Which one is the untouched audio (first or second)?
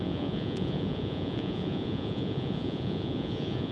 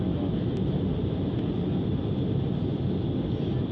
second